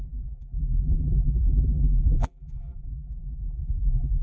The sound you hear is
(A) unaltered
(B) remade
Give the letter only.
B